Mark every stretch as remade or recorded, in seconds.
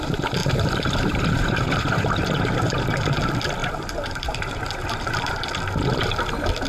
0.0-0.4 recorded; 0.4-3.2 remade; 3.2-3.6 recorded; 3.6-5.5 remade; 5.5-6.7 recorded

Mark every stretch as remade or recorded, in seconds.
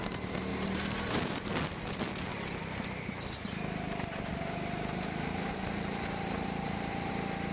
0.0-0.5 recorded; 0.5-1.5 remade; 1.5-2.6 recorded; 2.6-7.1 remade; 7.1-7.5 recorded